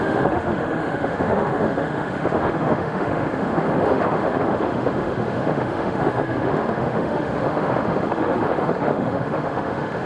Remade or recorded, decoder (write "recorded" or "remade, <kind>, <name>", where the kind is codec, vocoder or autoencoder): remade, autoencoder, DAC-VAE